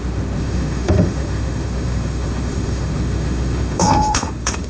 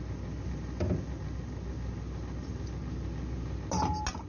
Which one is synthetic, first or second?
first